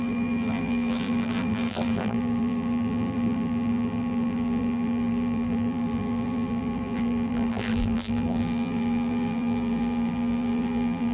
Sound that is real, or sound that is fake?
fake